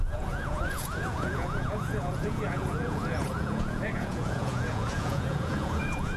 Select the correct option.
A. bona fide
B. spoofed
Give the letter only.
B